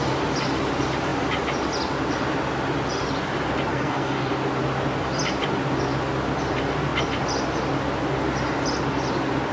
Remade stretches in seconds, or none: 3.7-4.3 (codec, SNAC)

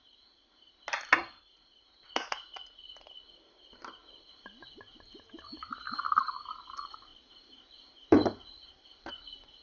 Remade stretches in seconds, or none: 7.1-9.1 (vocoder, BigVGAN v2)

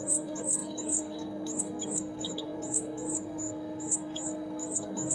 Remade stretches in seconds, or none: 0.0-5.1 (codec, SNAC)

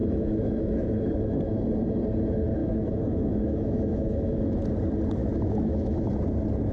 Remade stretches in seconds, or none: 0.0-1.2 (autoencoder, DAC-VAE); 2.6-4.6; 5.2-6.1

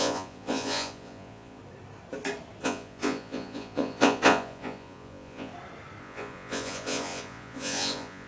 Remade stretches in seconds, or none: 0.0-1.6 (vocoder, Vocos); 2.6-5.5; 6.0-8.3

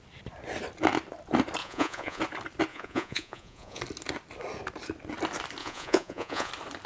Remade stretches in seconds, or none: 1.6-2.2 (vocoder, Vocos); 2.7-3.8; 5.6-6.5